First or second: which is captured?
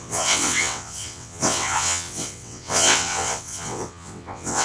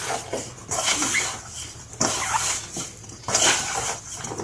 second